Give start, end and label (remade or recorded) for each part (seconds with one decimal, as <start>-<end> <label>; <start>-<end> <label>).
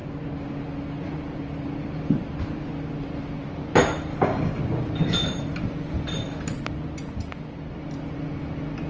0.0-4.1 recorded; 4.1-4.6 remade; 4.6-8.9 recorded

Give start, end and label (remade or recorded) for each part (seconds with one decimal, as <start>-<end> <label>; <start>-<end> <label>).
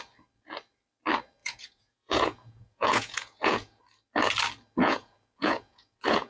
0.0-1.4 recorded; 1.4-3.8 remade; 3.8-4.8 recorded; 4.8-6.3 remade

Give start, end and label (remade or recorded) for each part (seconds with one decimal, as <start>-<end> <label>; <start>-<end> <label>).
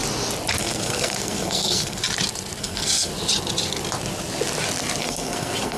0.0-0.6 recorded; 0.6-2.0 remade; 2.0-2.6 recorded; 2.6-3.1 remade; 3.1-5.0 recorded; 5.0-5.8 remade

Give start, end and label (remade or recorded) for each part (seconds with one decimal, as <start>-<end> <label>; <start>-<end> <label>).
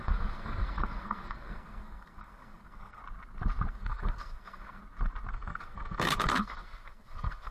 0.0-3.0 remade; 3.0-3.7 recorded; 3.7-4.8 remade; 4.8-5.3 recorded; 5.3-7.5 remade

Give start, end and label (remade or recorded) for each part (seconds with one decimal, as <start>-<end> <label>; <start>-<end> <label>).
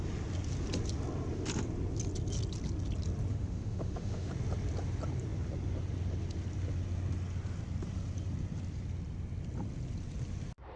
0.0-3.3 recorded; 3.3-4.3 remade; 4.3-10.8 recorded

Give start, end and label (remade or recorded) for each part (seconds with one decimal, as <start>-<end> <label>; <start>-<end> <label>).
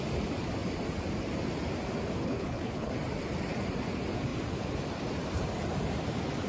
0.0-2.2 recorded; 2.2-2.9 remade; 2.9-6.5 recorded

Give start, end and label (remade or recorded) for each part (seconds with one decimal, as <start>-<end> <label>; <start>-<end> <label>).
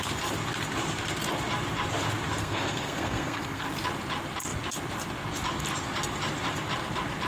0.0-2.4 recorded; 2.4-3.7 remade; 3.7-7.3 recorded